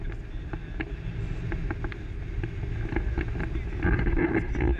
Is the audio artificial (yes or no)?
no